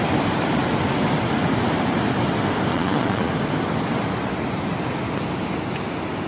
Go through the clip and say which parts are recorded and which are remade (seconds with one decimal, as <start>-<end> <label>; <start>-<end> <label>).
0.0-2.7 recorded; 2.7-3.3 remade; 3.3-6.3 recorded